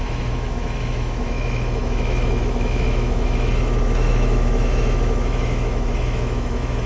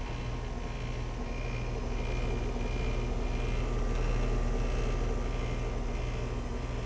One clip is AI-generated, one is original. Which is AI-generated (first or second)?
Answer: first